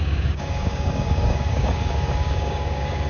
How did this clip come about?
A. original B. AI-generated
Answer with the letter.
B